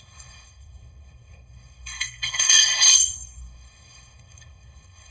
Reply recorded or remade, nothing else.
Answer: remade